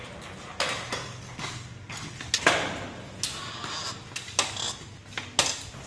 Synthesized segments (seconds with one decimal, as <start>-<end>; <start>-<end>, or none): none